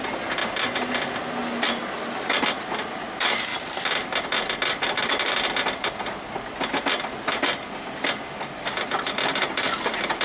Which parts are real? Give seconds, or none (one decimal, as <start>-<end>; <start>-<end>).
0.0-10.2